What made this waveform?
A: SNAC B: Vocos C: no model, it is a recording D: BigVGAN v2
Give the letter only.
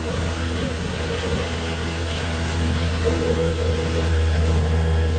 A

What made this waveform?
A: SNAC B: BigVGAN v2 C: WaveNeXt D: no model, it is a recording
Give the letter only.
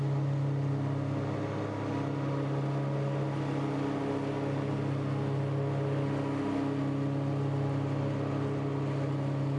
D